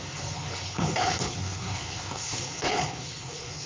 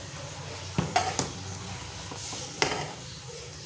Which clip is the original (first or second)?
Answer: second